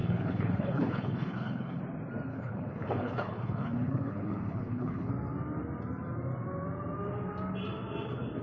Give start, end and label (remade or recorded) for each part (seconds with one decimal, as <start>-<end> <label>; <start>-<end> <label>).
0.0-1.8 remade; 1.8-2.3 recorded; 2.3-5.1 remade; 5.1-8.4 recorded